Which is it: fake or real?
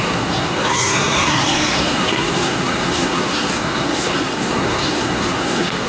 fake